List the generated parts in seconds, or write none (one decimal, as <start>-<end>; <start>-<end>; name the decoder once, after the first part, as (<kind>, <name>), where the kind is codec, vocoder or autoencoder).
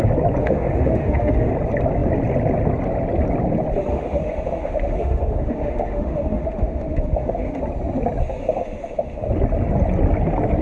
0.4-1.5 (autoencoder, DAC-VAE); 3.9-7.6; 8.4-9.3